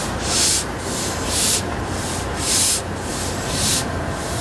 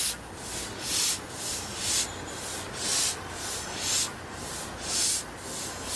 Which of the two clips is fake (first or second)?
first